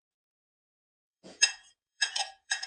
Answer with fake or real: fake